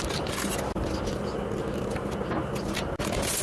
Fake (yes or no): no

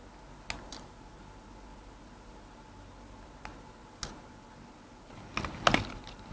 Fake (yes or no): no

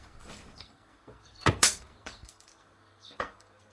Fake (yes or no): yes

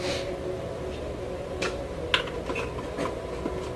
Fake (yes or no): no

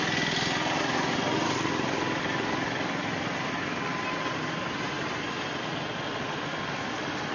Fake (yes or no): no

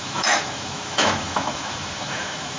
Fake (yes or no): yes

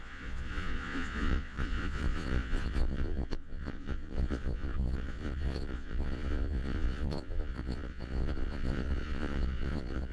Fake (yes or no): yes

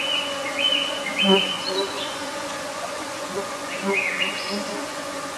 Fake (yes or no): yes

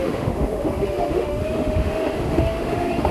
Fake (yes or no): yes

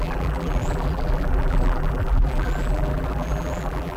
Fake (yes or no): yes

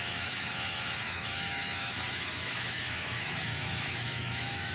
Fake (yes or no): yes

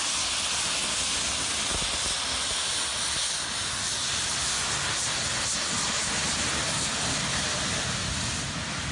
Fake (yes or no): no